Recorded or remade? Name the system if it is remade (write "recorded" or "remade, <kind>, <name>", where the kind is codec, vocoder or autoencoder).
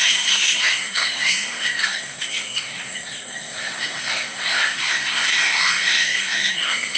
remade, codec, SNAC